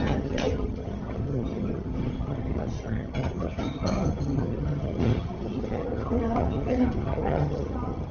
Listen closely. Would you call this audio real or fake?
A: fake